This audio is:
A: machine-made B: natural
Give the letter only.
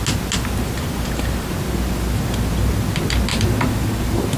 B